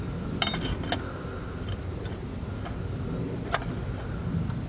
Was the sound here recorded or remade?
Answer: recorded